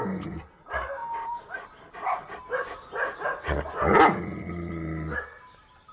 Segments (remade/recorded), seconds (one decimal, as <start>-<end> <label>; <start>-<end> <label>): 0.0-5.9 recorded